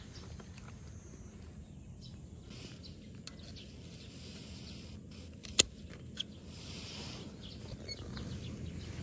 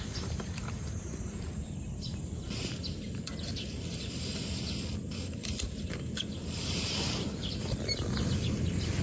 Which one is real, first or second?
first